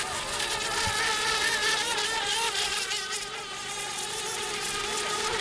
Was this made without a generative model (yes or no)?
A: yes